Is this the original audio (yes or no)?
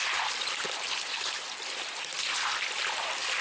yes